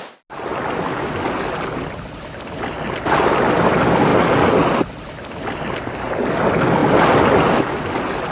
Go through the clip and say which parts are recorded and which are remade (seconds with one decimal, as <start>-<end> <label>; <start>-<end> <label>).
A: 0.0-8.3 recorded